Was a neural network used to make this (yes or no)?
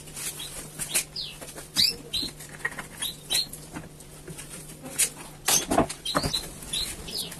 no